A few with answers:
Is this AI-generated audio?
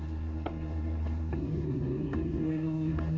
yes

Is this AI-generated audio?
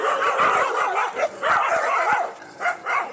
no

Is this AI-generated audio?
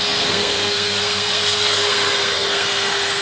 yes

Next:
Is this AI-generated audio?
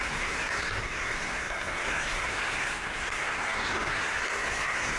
yes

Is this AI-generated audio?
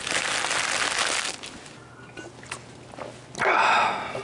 no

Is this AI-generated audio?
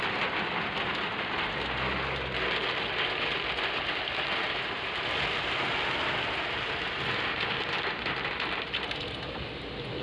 no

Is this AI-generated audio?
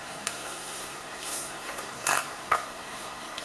yes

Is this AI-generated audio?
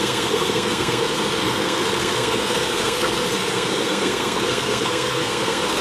yes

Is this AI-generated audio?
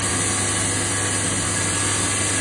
no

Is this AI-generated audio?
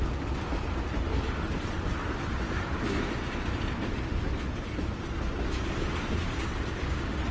no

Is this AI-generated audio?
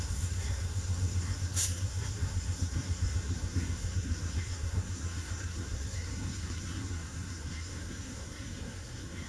yes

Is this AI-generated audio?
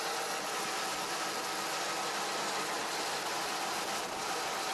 no